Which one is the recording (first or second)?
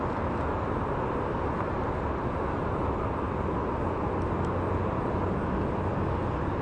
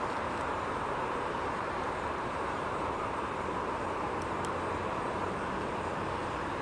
first